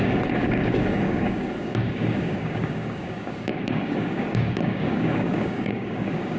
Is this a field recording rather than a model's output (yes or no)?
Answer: no